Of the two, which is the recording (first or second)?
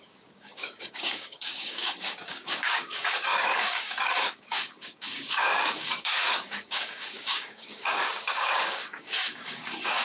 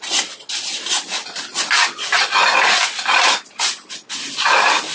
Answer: second